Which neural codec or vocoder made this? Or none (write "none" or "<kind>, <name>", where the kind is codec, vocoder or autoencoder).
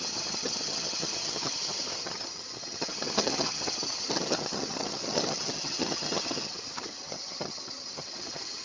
vocoder, HiFi-GAN